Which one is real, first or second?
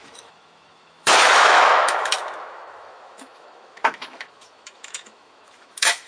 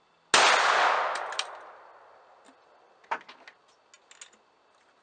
second